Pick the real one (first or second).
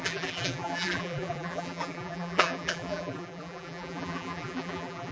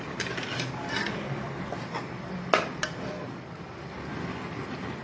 second